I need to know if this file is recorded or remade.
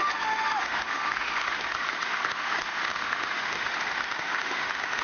remade